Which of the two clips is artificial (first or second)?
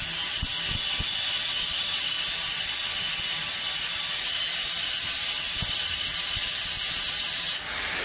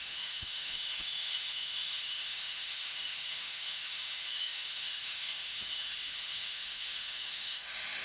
second